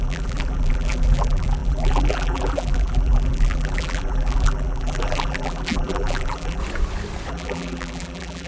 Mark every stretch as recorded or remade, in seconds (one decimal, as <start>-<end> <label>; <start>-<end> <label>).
0.0-6.6 remade; 6.6-7.3 recorded; 7.3-8.5 remade